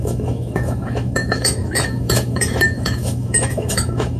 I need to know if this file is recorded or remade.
remade